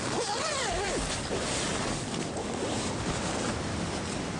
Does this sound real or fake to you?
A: real